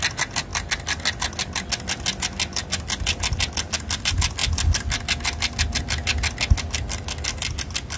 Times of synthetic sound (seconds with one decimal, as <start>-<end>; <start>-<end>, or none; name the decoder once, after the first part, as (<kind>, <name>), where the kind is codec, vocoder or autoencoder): none